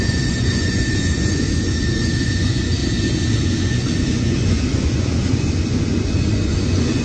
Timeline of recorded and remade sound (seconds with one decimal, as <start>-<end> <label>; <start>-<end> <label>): 0.0-2.8 remade; 2.8-3.4 recorded; 3.4-7.0 remade